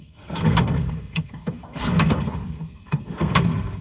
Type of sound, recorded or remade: remade